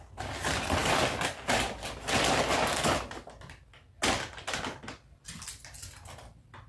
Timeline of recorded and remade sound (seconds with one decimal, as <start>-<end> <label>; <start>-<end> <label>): 0.0-6.7 recorded